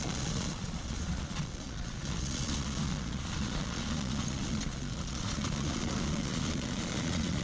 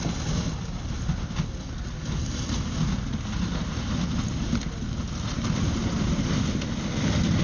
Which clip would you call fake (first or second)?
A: first